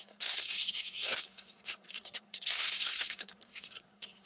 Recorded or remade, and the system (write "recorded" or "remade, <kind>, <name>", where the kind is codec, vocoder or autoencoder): remade, codec, SNAC